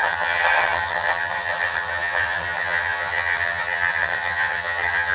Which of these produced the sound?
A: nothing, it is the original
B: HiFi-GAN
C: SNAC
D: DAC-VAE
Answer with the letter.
B